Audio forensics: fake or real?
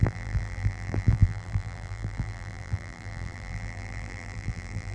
fake